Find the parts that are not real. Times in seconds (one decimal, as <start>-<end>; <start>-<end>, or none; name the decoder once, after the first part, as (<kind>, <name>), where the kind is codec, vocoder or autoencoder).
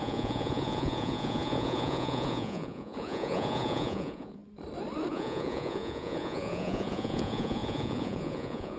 0.0-4.4 (vocoder, Vocos); 5.1-8.8